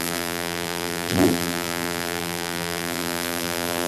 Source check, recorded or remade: remade